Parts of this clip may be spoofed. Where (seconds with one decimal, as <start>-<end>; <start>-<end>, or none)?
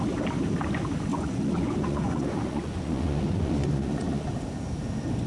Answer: 1.1-4.3